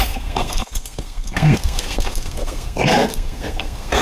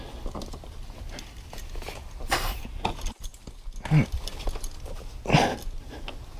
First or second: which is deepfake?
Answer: first